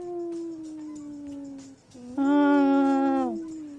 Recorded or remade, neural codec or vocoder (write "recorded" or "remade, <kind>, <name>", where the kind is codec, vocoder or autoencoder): recorded